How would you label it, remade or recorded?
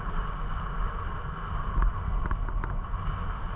recorded